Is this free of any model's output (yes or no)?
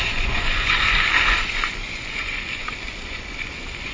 no